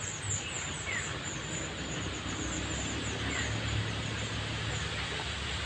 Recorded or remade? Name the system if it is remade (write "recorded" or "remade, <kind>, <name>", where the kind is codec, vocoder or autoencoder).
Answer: recorded